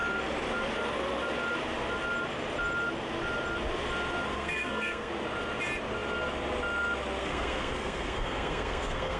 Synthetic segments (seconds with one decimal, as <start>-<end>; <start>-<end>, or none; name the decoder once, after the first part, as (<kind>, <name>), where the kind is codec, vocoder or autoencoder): 4.3-5.1 (codec, SNAC); 7.2-9.2